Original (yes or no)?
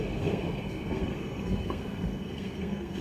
no